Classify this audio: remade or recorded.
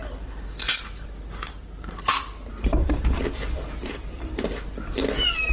recorded